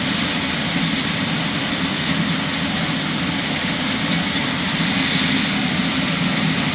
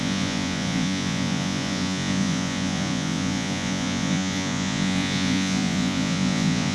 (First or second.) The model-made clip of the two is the second